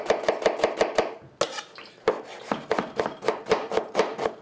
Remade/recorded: recorded